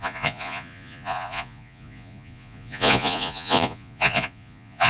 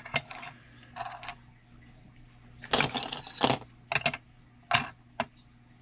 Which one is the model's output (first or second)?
first